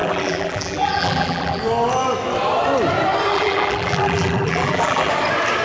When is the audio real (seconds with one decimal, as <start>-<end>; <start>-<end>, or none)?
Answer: 1.6-3.3; 5.1-5.6